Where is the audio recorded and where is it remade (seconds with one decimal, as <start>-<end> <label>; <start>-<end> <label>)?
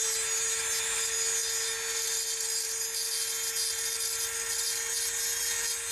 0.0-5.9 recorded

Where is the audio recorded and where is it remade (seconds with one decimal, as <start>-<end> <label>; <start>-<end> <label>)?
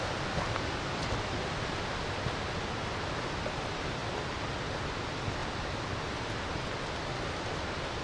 0.0-8.0 recorded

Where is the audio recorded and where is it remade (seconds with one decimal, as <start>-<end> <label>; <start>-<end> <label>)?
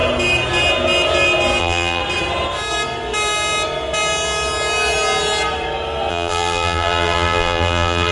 0.0-1.6 recorded; 1.6-2.0 remade; 2.0-6.1 recorded; 6.1-8.1 remade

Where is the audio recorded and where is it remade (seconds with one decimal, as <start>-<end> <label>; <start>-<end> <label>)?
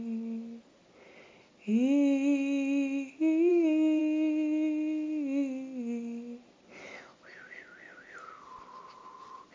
0.0-3.5 recorded; 3.5-4.0 remade; 4.0-9.5 recorded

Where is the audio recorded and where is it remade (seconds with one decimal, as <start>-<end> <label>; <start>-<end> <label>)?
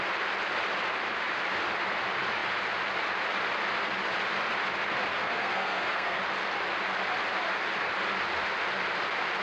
0.0-5.1 recorded; 5.1-6.2 remade; 6.2-9.4 recorded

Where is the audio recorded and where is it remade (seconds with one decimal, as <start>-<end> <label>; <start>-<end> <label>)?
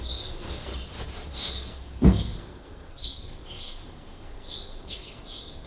0.0-0.7 remade; 0.7-1.3 recorded; 1.3-5.7 remade